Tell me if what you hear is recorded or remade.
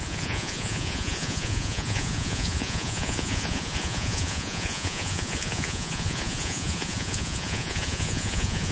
remade